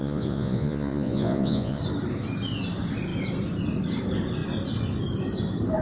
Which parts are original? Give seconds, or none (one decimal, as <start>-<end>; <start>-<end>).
1.8-5.8